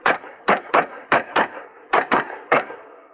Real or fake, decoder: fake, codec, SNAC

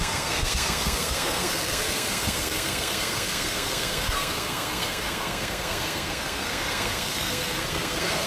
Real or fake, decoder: fake, codec, SNAC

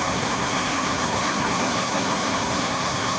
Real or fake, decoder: fake, codec, SNAC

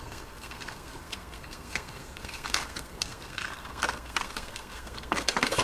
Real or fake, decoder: fake, codec, SNAC